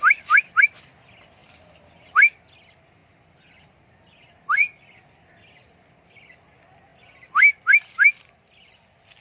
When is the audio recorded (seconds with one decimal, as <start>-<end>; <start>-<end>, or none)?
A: 0.0-1.4; 2.3-3.0; 5.1-6.9; 8.5-9.2